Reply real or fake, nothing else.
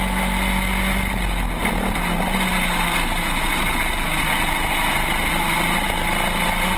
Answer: real